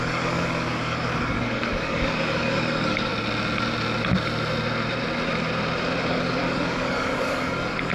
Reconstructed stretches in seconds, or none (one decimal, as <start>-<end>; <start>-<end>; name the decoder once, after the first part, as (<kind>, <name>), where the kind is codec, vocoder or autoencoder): 0.0-3.1 (codec, DAC); 6.1-7.9